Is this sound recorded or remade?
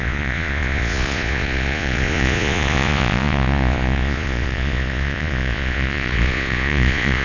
remade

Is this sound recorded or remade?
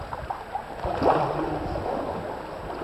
recorded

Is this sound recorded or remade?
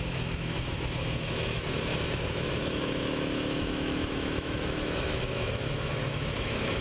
remade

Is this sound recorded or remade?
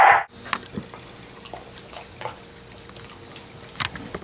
recorded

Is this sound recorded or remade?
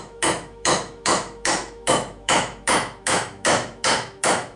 remade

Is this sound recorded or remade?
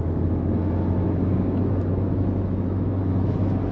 remade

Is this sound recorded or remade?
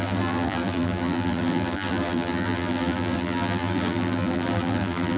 remade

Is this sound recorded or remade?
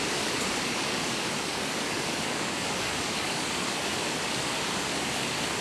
remade